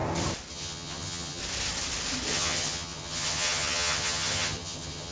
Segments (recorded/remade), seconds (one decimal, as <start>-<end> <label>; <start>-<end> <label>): 0.0-0.5 recorded; 0.5-1.4 remade; 1.4-2.3 recorded; 2.3-5.1 remade